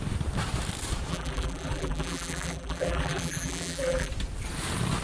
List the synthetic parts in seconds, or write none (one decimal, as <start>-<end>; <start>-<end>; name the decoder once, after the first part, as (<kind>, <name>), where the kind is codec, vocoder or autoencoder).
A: 1.1-4.1 (vocoder, BigVGAN v2)